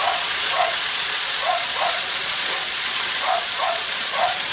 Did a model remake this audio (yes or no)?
yes